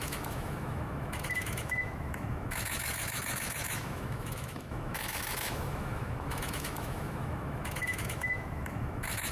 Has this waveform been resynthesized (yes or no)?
yes